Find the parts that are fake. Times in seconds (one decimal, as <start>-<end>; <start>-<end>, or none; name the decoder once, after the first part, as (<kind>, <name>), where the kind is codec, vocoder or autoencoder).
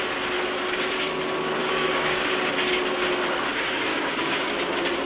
1.6-2.5 (codec, DAC); 3.9-4.5